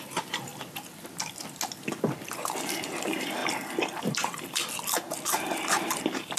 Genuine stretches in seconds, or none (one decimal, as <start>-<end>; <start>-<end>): 0.5-2.3; 3.4-4.0; 4.6-5.7